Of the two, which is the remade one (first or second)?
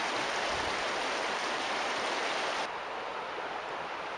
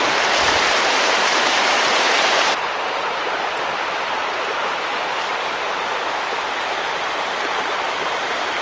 second